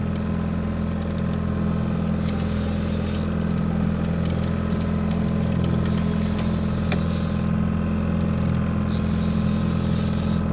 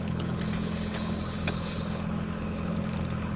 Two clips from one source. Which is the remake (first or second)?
second